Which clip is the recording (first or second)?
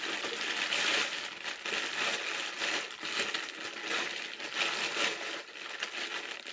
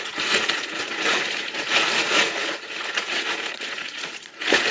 first